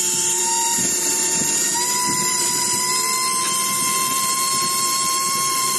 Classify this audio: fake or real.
fake